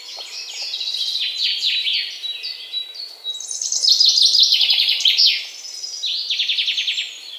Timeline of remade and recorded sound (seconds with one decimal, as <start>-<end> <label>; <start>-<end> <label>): 0.0-4.5 recorded; 4.5-5.2 remade; 5.2-7.4 recorded